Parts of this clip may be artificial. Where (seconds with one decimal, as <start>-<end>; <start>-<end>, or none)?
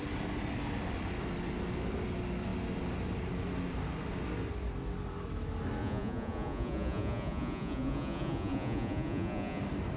5.8-9.6